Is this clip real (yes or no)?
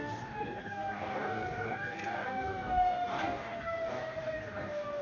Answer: no